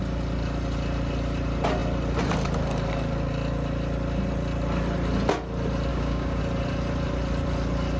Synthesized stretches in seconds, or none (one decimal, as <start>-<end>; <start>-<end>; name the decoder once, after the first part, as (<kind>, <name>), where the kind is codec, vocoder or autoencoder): 5.9-6.4 (codec, DAC)